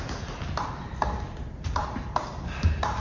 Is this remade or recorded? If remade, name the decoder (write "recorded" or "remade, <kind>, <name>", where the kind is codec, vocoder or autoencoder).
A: recorded